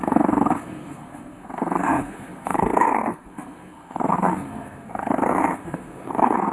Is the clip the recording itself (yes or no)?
no